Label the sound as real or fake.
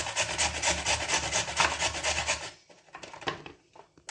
real